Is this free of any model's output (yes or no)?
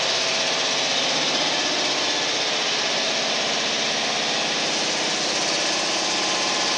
yes